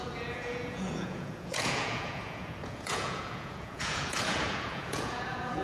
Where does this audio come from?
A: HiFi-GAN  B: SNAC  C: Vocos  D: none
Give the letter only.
C